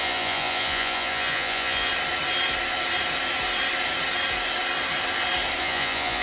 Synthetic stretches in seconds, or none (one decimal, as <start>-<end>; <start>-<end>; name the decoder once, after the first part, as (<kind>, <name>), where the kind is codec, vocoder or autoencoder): 0.0-1.9 (vocoder, Vocos); 5.6-6.2